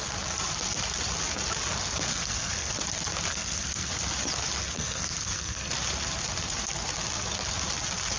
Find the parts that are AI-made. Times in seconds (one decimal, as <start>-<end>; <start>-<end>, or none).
2.1-2.7; 3.3-3.9; 4.6-5.7